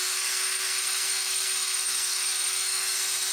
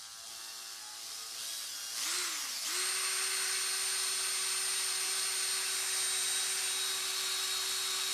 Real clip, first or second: second